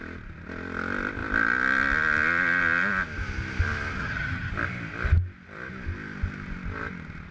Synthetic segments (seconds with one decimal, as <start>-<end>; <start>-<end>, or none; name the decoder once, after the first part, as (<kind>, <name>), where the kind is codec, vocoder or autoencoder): 4.0-4.5 (vocoder, HiFi-GAN)